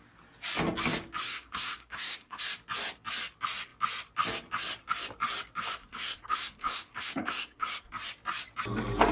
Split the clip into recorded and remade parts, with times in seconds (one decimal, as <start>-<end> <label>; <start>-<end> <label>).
0.0-1.2 recorded; 1.2-2.4 remade; 2.4-5.8 recorded; 5.8-7.9 remade; 7.9-9.1 recorded